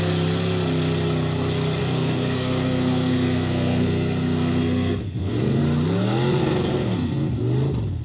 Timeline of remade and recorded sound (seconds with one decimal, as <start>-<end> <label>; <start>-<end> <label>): 0.0-1.8 recorded; 1.8-5.6 remade; 5.6-6.4 recorded; 6.4-7.4 remade; 7.4-8.0 recorded